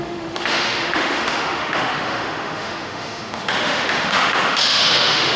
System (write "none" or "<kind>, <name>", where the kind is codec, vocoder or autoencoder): autoencoder, DAC-VAE